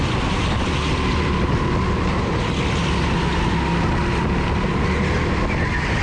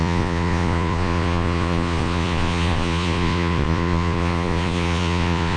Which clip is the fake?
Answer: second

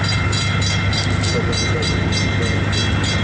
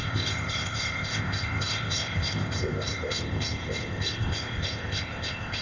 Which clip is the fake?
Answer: second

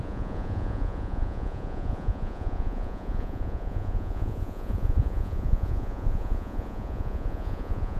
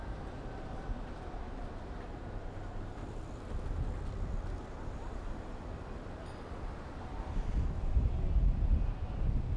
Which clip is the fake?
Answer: first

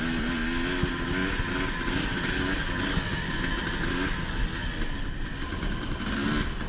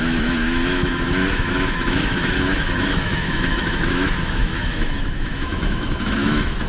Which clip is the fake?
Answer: second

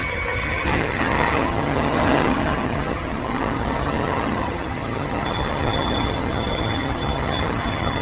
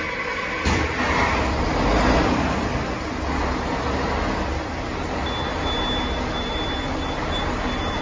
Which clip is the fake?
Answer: first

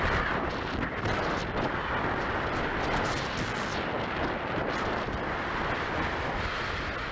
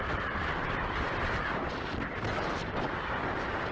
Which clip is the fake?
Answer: second